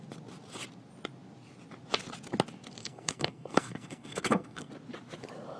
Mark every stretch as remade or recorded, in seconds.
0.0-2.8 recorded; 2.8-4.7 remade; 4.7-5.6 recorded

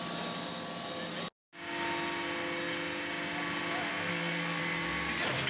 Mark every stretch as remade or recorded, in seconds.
0.0-3.9 recorded; 3.9-4.6 remade; 4.6-5.5 recorded

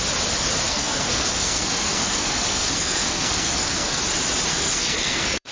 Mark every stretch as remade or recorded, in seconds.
0.0-0.7 recorded; 0.7-4.0 remade; 4.0-4.5 recorded; 4.5-5.5 remade

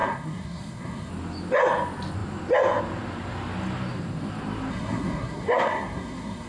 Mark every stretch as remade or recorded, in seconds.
0.0-1.1 remade; 1.1-4.7 recorded; 4.7-6.5 remade

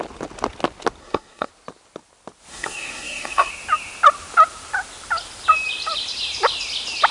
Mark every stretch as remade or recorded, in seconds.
0.0-1.0 recorded; 1.0-1.5 remade; 1.5-2.5 recorded; 2.5-3.5 remade; 3.5-7.1 recorded